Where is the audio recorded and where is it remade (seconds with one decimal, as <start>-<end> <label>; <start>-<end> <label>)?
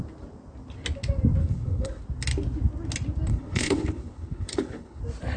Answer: 0.0-1.4 recorded; 1.4-2.0 remade; 2.0-3.3 recorded; 3.3-5.0 remade; 5.0-5.4 recorded